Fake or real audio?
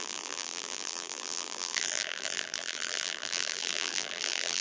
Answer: fake